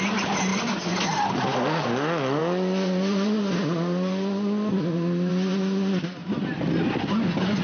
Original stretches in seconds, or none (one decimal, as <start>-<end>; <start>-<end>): 0.0-7.6